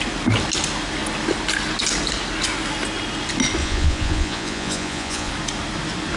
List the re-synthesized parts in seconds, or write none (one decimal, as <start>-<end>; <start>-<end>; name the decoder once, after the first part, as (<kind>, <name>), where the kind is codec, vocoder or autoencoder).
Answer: 3.6-5.3 (vocoder, Vocos)